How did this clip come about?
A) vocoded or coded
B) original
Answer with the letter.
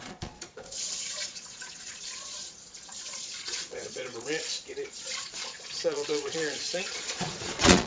A